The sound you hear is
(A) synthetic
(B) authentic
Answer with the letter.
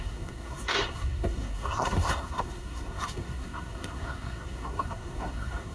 A